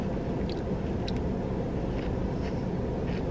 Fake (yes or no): no